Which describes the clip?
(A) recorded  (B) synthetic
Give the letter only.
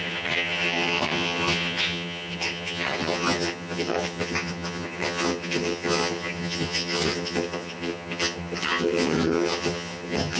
B